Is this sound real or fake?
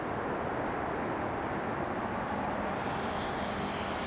real